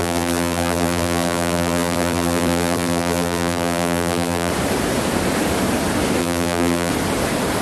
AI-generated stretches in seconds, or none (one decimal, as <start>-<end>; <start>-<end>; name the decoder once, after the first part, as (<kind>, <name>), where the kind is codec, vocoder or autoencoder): 0.0-4.5 (vocoder, BigVGAN v2); 6.2-6.9